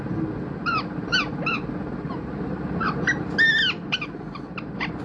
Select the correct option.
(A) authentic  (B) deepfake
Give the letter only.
A